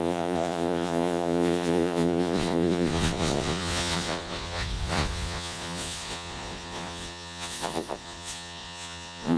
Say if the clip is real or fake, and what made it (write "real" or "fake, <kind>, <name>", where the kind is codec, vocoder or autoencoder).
fake, vocoder, Vocos